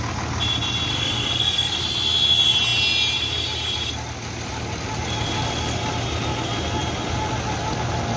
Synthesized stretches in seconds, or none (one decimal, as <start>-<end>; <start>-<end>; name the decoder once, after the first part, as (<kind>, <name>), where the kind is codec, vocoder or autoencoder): 0.9-1.8 (codec, SNAC)